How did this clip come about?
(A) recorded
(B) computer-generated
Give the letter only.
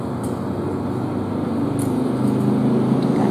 A